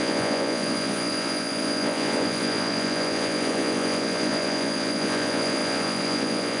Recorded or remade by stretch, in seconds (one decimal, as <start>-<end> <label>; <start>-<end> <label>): 0.0-6.6 remade